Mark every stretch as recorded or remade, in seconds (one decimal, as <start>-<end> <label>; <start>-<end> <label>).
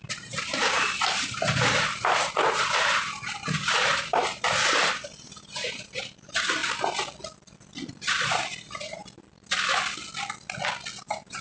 0.0-6.6 remade; 6.6-7.9 recorded; 7.9-9.0 remade; 9.0-11.0 recorded; 11.0-11.4 remade